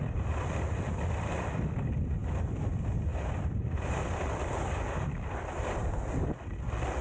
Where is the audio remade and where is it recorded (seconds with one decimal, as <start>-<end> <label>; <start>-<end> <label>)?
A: 0.0-7.0 recorded